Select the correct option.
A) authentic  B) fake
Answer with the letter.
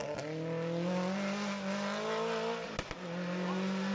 A